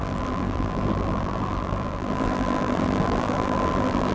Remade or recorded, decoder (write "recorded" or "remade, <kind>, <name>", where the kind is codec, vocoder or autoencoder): remade, vocoder, BigVGAN v2